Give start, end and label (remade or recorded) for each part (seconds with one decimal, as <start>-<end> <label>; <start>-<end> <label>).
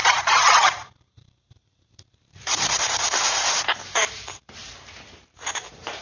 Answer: 0.0-6.0 remade